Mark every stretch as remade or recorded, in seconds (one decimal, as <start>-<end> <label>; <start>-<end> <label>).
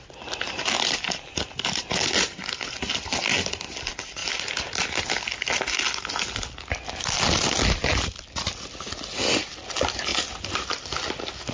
0.0-11.5 recorded